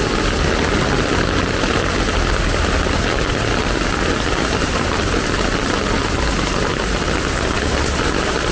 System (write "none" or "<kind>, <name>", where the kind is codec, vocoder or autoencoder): none